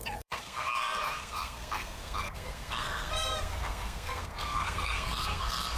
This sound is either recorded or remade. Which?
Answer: remade